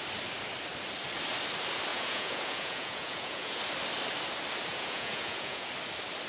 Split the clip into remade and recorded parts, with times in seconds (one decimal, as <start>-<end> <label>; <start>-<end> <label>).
0.0-1.9 recorded; 1.9-3.6 remade; 3.6-4.7 recorded; 4.7-5.7 remade; 5.7-6.3 recorded